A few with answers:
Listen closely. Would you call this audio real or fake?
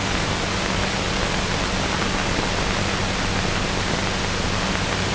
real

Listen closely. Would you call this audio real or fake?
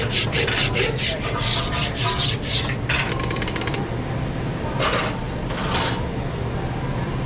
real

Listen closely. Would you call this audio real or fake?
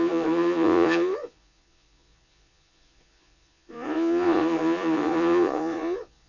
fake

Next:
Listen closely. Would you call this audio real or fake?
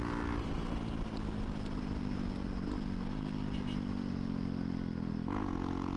real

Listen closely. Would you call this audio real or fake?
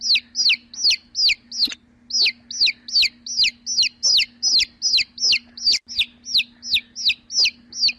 real